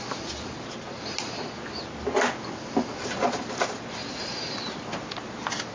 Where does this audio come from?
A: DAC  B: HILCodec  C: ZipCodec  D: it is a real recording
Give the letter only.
D